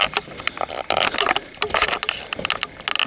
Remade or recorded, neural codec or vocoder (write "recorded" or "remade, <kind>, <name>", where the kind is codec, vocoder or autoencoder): recorded